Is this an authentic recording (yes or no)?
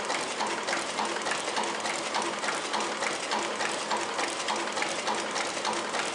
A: yes